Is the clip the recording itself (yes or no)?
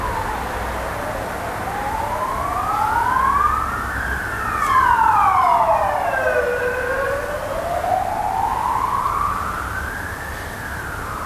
yes